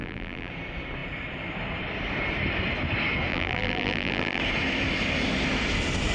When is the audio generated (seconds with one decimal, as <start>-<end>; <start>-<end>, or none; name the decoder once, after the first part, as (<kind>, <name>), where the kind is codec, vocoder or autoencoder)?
0.0-0.5 (vocoder, BigVGAN v2); 3.3-4.4